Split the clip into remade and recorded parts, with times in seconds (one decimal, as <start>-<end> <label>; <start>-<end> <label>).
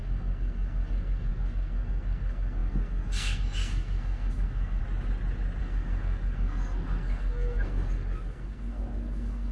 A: 0.0-4.8 remade; 4.8-5.6 recorded; 5.6-9.5 remade